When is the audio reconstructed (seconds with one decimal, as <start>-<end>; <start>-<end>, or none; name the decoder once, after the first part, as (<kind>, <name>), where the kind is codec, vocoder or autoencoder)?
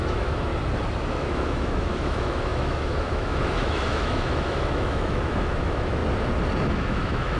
0.0-0.5 (autoencoder, DAC-VAE); 1.1-6.0; 6.7-7.4